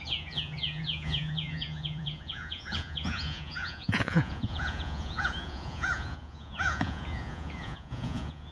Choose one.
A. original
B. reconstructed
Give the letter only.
B